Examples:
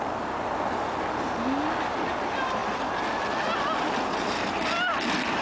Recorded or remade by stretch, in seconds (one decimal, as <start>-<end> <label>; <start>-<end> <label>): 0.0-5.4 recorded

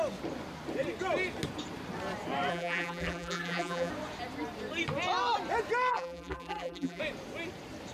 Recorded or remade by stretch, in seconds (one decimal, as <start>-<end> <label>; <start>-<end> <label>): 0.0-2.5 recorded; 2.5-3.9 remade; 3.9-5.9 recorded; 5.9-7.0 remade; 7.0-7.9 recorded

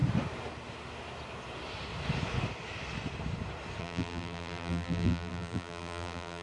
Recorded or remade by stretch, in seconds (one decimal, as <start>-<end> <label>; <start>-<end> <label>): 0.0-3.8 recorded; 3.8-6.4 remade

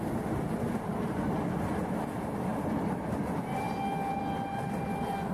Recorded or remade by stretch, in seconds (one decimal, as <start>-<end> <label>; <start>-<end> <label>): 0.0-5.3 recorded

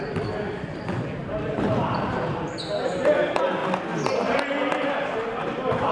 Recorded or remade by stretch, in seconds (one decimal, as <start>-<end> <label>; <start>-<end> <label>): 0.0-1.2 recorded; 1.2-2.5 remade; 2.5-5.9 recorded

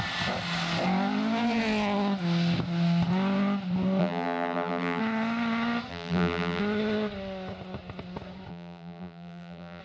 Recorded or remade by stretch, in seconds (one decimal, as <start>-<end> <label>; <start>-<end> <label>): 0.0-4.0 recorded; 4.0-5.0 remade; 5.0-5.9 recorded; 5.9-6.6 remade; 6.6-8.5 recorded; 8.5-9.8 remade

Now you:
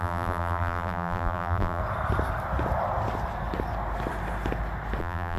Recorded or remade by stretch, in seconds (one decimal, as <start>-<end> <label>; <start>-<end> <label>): 0.0-1.8 remade; 1.8-5.0 recorded; 5.0-5.4 remade